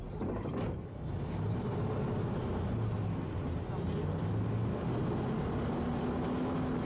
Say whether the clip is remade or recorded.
recorded